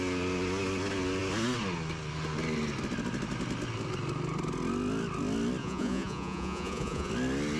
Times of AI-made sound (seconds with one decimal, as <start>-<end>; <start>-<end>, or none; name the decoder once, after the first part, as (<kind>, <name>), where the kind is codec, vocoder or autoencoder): 5.6-7.1 (vocoder, Vocos)